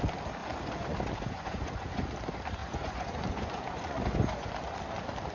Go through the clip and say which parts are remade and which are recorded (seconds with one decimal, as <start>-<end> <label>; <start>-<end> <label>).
0.0-0.4 recorded; 0.4-2.0 remade; 2.0-2.6 recorded; 2.6-4.5 remade; 4.5-5.3 recorded